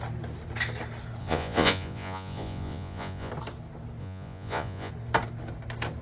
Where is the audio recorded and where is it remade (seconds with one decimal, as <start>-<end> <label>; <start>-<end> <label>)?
0.0-1.2 recorded; 1.2-3.3 remade; 3.3-4.0 recorded; 4.0-4.9 remade; 4.9-6.0 recorded